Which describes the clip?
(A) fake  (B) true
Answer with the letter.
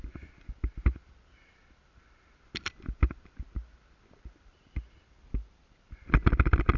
B